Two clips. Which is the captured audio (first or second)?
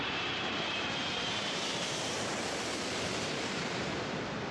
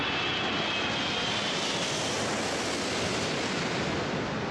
second